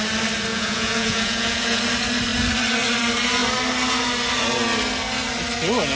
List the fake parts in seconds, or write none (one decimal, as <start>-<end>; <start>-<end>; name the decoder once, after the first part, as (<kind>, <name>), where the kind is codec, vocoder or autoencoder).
0.5-1.8 (vocoder, Vocos)